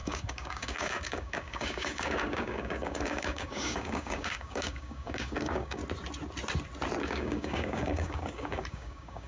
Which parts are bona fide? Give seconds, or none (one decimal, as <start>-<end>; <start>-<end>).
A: 5.8-7.0